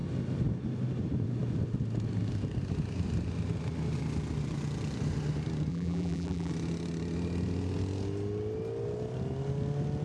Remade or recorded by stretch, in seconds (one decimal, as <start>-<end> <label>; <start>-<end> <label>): 0.0-5.7 recorded; 5.7-6.5 remade; 6.5-10.0 recorded